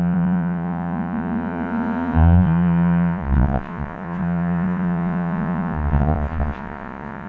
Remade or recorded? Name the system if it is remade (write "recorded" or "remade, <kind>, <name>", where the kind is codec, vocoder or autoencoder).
remade, vocoder, Vocos